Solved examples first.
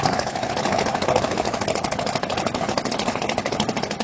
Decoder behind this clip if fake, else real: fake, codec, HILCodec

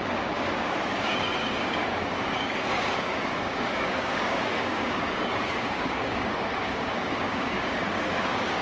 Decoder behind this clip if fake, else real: fake, codec, DAC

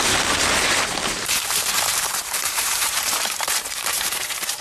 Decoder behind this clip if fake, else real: fake, vocoder, BigVGAN v2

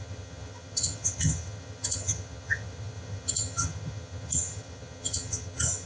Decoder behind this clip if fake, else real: fake, vocoder, HiFi-GAN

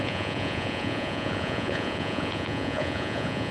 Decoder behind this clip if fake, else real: fake, vocoder, Vocos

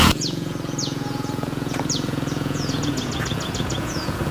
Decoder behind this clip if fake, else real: fake, vocoder, Vocos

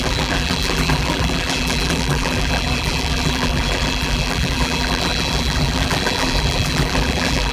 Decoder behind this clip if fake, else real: fake, vocoder, BigVGAN v2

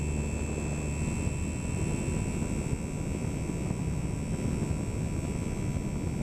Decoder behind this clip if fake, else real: real